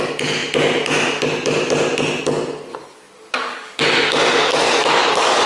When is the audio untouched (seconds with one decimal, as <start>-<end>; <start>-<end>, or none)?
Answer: 0.0-2.7; 3.8-4.5